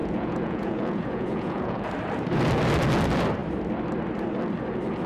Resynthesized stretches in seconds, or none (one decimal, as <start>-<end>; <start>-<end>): 0.0-1.9